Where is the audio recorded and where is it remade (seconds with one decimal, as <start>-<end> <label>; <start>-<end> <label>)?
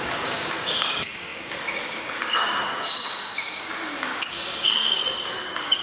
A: 0.0-5.8 remade